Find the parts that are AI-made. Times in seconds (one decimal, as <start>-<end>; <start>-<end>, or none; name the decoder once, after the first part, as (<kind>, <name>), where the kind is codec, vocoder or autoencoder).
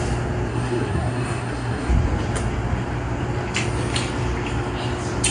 0.5-1.9 (codec, SNAC)